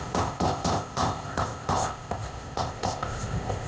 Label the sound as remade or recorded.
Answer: remade